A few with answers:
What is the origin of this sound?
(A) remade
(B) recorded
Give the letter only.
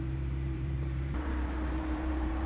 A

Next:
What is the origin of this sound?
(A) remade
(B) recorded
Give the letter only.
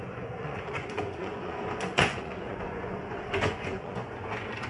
A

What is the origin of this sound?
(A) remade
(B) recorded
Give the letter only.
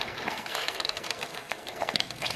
A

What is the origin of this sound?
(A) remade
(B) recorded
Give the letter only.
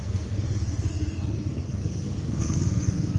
A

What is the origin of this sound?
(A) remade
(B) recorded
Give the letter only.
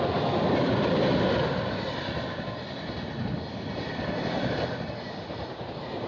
B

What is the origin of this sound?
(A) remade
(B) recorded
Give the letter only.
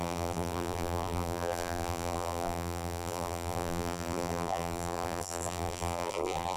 A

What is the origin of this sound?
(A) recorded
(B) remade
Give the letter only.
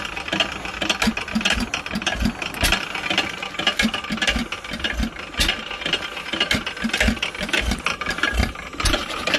A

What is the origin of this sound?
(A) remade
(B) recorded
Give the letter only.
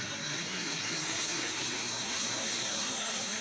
A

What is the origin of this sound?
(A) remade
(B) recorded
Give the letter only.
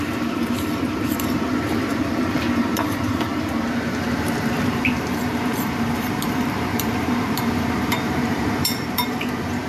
A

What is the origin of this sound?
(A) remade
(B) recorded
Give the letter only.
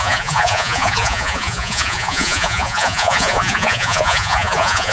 A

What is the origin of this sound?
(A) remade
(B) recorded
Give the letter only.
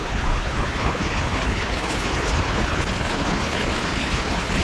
A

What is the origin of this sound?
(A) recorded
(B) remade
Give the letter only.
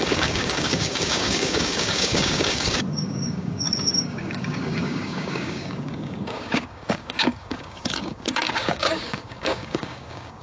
B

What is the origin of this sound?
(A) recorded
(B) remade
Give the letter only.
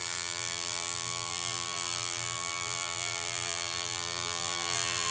B